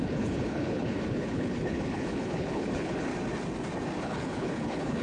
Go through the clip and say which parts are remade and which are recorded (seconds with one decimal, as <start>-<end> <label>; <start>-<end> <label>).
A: 0.0-3.1 remade; 3.1-4.0 recorded; 4.0-5.0 remade